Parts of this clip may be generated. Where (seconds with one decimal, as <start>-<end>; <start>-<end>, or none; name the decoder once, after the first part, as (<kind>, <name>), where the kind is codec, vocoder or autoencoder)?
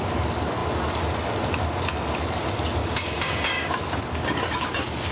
2.8-3.7 (codec, DAC)